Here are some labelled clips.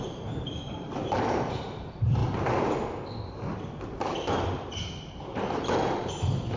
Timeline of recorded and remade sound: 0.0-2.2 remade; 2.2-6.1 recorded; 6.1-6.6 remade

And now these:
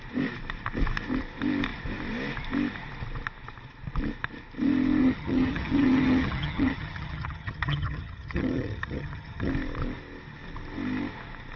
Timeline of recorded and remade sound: 0.0-5.0 recorded; 5.0-9.5 remade; 9.5-11.6 recorded

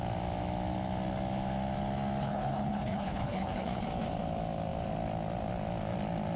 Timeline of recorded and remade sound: 0.0-2.2 recorded; 2.2-3.8 remade; 3.8-6.4 recorded

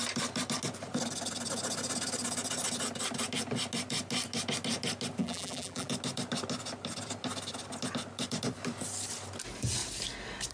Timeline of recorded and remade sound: 0.0-5.2 recorded; 5.2-5.9 remade; 5.9-10.5 recorded